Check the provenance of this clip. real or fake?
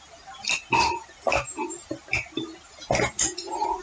real